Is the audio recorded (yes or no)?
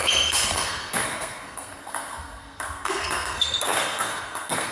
no